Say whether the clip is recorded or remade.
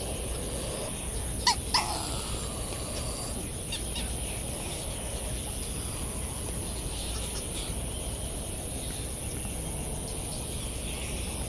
recorded